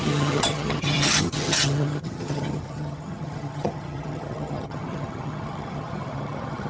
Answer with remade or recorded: remade